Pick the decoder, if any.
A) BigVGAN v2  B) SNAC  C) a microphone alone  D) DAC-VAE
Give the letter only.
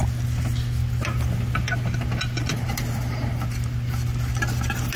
C